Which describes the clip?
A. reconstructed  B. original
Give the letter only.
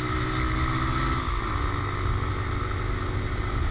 A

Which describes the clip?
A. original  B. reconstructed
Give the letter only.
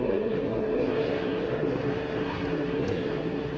B